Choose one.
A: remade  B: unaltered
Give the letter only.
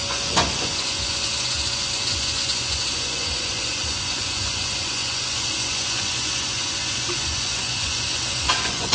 A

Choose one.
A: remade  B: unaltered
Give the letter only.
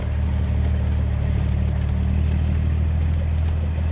B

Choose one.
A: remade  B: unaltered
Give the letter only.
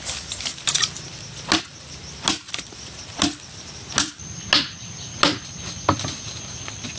B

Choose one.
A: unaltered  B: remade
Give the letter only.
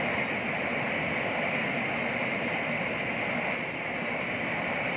A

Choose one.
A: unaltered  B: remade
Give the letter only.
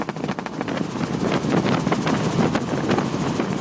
A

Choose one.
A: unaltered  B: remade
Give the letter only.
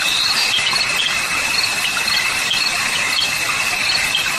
A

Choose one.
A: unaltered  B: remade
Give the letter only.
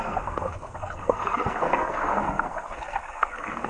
B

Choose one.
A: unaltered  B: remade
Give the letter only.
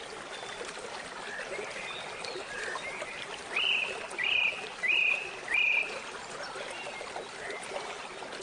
A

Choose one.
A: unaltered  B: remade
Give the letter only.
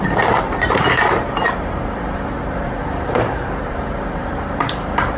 B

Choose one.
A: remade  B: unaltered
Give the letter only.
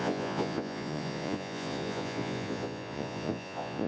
A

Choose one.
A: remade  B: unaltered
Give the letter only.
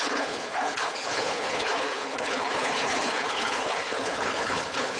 A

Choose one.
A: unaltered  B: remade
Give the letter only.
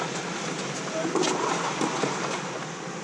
A